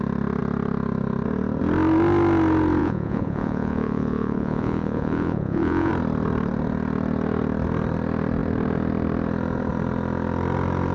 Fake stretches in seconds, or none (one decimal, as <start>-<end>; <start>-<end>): 2.8-5.9